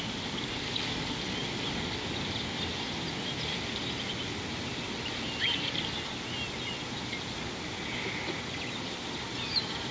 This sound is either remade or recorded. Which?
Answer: recorded